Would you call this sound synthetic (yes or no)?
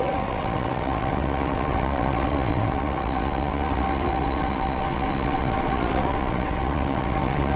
yes